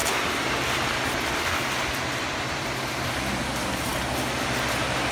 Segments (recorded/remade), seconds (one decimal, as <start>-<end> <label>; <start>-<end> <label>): 0.0-3.1 remade; 3.1-5.1 recorded